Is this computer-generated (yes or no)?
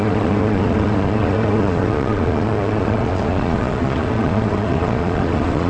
yes